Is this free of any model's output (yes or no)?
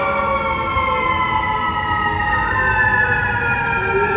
yes